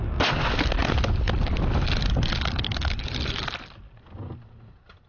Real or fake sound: real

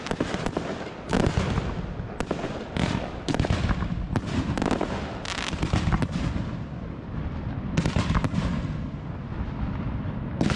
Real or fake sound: real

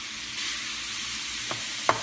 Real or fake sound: real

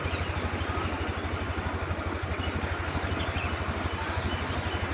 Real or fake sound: real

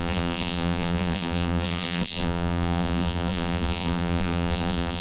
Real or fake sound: fake